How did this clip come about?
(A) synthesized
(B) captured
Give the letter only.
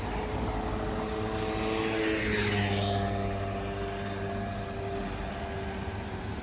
B